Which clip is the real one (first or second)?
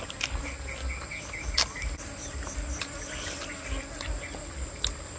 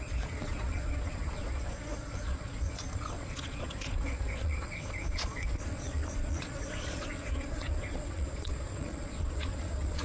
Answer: first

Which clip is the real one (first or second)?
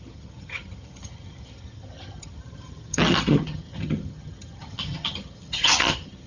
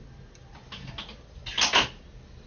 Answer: second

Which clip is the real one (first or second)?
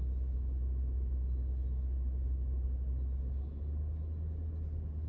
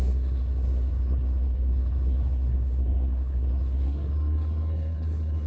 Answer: first